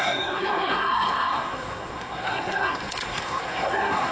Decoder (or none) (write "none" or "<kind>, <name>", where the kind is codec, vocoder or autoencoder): codec, SNAC